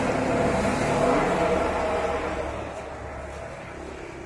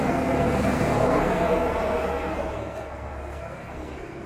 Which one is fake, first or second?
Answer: second